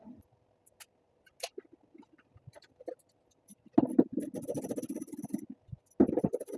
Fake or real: real